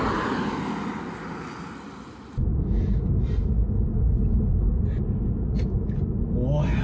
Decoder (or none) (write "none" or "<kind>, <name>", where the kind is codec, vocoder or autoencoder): none